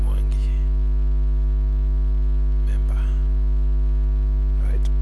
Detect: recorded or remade recorded